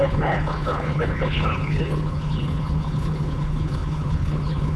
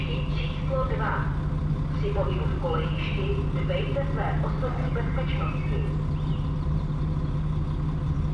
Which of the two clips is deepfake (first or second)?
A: first